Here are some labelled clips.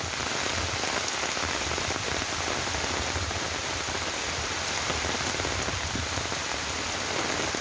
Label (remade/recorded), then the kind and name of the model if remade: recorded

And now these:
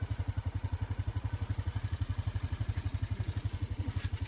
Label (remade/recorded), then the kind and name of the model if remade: remade, vocoder, Vocos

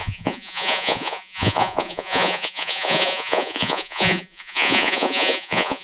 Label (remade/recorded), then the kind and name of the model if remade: remade, vocoder, Vocos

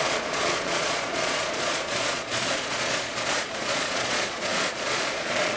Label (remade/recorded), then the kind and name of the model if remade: remade, vocoder, Vocos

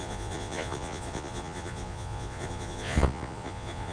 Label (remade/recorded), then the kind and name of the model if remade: remade, vocoder, Vocos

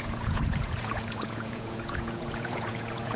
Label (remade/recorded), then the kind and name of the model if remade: remade, vocoder, Vocos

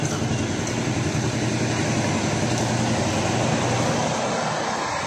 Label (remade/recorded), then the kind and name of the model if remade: recorded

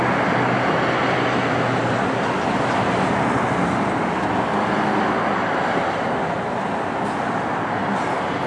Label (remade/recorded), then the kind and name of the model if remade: recorded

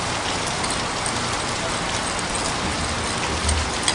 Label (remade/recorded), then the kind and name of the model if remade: recorded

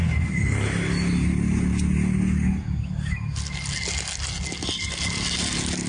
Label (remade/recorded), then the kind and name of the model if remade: recorded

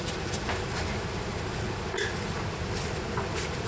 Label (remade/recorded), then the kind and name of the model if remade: recorded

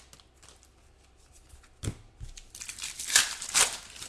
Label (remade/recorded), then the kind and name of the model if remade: recorded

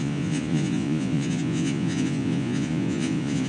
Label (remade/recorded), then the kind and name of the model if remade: remade, vocoder, Vocos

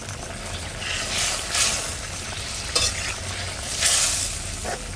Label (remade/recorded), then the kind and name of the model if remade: recorded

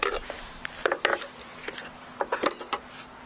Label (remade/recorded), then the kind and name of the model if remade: recorded